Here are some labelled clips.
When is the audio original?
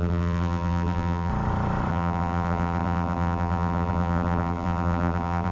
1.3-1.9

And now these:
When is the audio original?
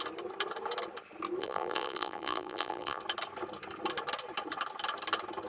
0.0-1.4; 3.0-5.5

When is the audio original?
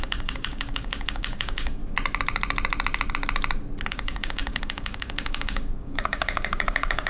1.8-3.9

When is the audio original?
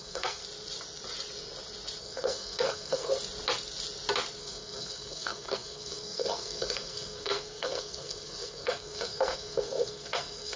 0.4-2.0; 3.1-4.4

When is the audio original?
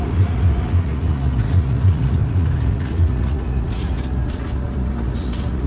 none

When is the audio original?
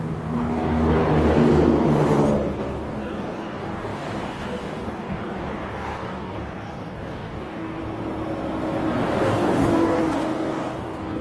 1.0-2.6; 7.8-9.2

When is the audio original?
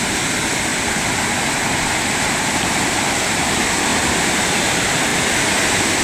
0.7-1.9; 3.9-4.5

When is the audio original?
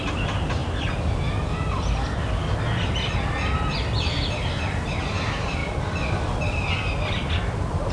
0.0-5.6